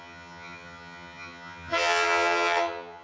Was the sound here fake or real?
fake